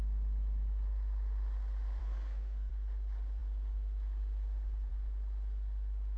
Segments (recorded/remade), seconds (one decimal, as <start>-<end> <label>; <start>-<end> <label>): 0.0-2.0 recorded; 2.0-2.7 remade; 2.7-6.2 recorded